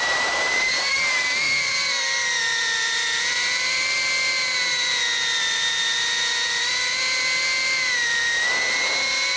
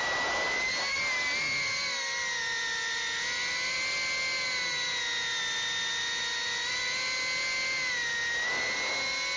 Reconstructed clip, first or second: first